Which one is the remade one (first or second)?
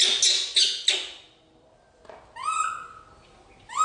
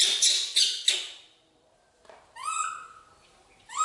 second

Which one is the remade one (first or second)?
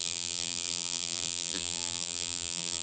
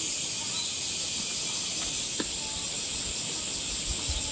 first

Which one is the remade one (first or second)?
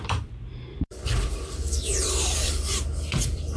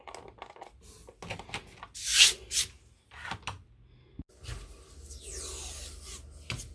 first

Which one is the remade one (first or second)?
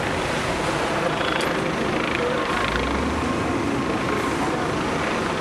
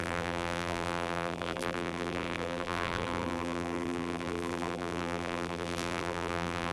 second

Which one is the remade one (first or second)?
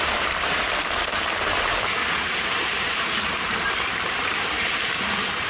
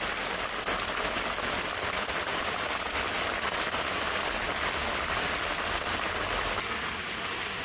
first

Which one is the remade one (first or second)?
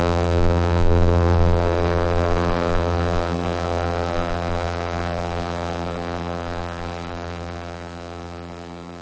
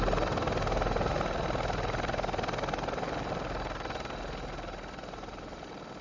first